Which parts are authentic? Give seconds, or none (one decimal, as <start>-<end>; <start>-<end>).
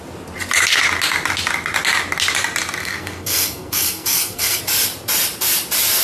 0.0-2.8; 4.6-6.0